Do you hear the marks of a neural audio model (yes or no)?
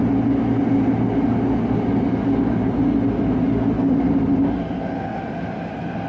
no